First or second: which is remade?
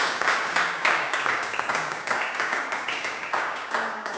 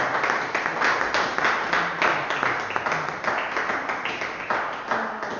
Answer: first